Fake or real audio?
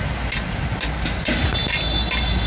real